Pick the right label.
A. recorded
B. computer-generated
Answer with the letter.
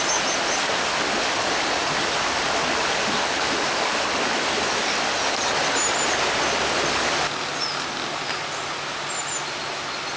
A